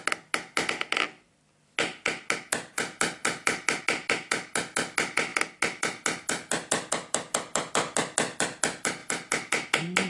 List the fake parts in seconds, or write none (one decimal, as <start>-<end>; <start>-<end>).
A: 3.2-3.8; 5.3-7.7